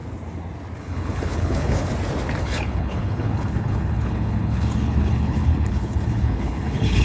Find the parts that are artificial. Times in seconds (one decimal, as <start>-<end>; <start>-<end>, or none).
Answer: 0.8-1.9; 2.4-7.0